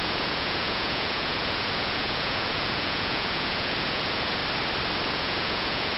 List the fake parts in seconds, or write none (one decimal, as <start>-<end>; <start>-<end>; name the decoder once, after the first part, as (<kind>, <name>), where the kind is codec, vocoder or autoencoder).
0.0-4.4 (vocoder, Vocos); 5.1-6.0